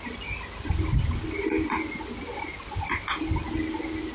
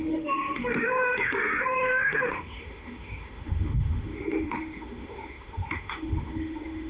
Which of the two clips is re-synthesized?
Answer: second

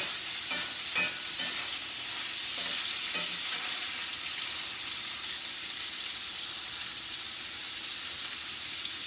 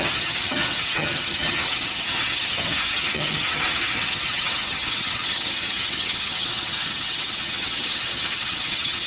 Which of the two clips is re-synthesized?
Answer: second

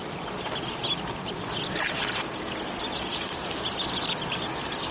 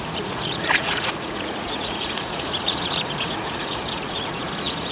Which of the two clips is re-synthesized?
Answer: second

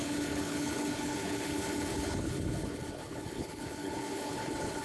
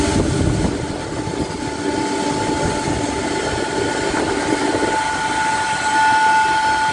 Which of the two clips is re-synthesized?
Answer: first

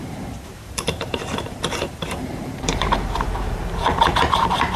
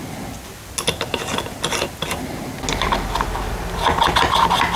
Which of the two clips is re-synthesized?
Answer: first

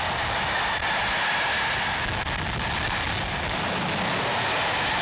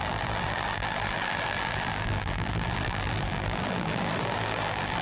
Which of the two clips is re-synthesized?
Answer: second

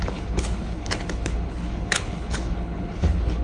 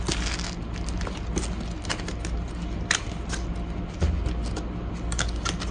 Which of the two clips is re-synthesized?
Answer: first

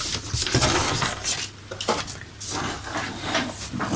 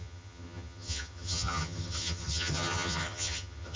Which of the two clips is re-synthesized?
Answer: second